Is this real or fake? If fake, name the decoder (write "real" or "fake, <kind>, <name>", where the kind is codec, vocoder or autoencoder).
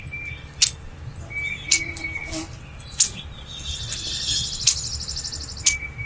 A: real